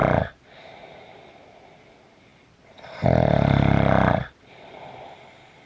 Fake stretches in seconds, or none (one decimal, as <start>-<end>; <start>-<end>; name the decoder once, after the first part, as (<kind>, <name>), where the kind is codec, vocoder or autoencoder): 0.0-0.6 (vocoder, BigVGAN v2); 2.3-5.7